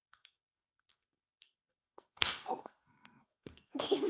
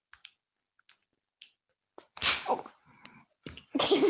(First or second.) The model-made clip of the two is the first